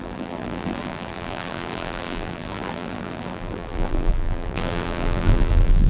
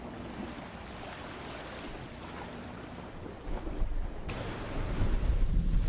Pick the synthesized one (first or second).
first